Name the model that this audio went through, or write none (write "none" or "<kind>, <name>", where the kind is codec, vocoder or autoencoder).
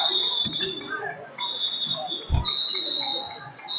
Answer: vocoder, Vocos